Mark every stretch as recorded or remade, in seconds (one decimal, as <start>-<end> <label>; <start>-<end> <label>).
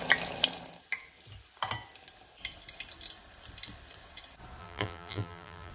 0.0-4.6 recorded; 4.6-5.7 remade